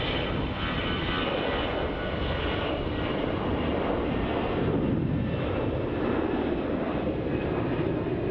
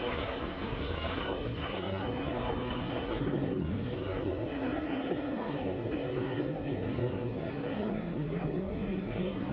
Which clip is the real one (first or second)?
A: first